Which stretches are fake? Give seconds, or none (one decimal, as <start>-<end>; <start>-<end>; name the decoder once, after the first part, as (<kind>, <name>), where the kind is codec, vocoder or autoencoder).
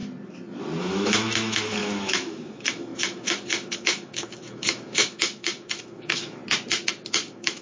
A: 0.8-6.4 (autoencoder, DAC-VAE); 7.1-7.6